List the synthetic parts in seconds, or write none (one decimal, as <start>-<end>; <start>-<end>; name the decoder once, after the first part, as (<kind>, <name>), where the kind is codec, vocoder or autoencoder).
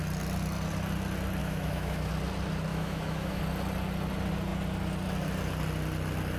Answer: 1.4-2.1 (autoencoder, DAC-VAE); 2.7-3.4